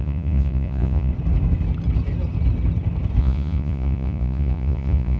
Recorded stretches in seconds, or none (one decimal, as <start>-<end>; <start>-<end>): 1.1-3.2